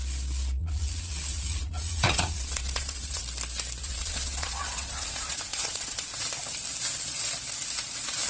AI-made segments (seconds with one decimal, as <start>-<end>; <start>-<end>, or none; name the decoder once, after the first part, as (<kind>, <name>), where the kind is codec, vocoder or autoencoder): 0.6-3.2 (vocoder, Vocos); 3.8-6.2